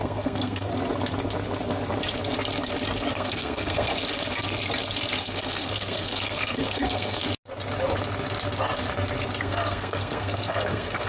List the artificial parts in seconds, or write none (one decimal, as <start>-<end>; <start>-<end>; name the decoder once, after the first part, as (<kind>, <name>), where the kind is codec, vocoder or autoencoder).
0.0-0.7 (codec, SNAC); 3.1-3.9; 5.2-7.2; 9.4-11.1